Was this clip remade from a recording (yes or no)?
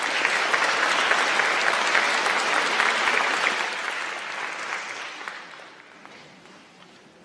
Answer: yes